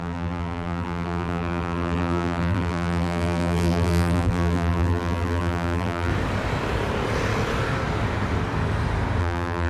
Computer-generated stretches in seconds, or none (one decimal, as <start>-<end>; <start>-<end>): 0.0-6.1; 9.2-9.7